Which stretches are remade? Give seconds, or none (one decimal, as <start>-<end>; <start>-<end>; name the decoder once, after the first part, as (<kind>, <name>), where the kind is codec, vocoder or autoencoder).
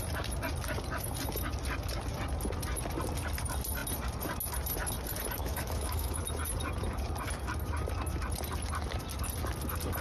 5.4-6.2 (autoencoder, DAC-VAE)